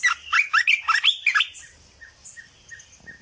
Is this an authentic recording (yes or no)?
yes